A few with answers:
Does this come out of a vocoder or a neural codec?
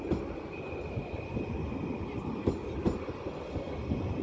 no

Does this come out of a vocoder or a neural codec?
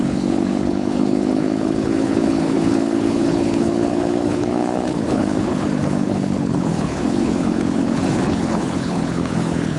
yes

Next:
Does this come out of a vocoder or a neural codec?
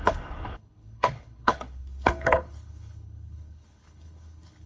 yes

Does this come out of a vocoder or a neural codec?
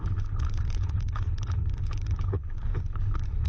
yes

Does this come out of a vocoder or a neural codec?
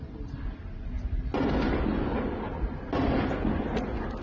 no